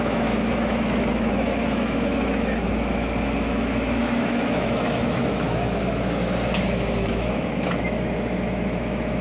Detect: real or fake fake